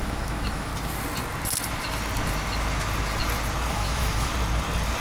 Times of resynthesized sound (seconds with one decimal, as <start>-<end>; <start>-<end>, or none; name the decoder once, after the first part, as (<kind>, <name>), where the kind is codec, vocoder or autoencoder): 0.0-0.7 (autoencoder, DAC-VAE); 3.7-4.3